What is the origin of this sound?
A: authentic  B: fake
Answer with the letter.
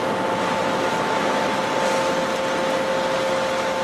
A